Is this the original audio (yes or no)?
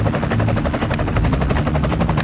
yes